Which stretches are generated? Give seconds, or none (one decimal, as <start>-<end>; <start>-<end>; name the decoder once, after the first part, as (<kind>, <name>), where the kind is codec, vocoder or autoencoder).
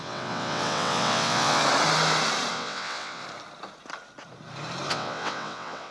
0.0-1.6 (vocoder, WaveNeXt); 2.5-3.2; 4.9-5.9